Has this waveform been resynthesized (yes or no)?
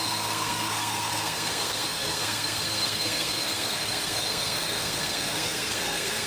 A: yes